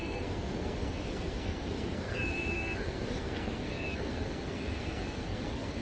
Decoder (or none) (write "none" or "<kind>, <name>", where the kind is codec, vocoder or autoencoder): codec, SNAC